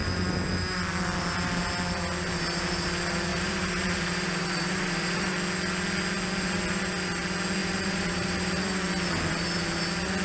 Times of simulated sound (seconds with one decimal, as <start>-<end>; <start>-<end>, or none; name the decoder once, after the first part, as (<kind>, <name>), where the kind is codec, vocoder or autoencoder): 3.3-5.3 (vocoder, BigVGAN v2); 7.6-8.6